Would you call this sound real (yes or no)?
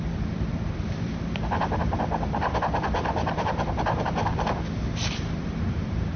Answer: no